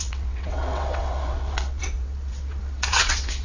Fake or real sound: fake